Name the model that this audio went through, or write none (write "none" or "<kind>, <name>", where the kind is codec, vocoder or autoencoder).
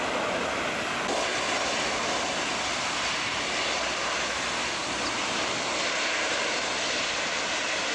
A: none